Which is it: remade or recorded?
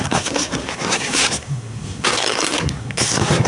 remade